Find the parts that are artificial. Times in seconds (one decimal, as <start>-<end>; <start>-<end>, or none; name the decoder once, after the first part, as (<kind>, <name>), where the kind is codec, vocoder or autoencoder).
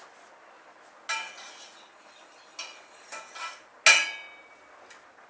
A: none